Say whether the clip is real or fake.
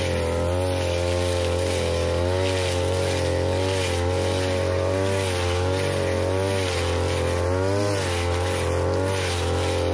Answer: real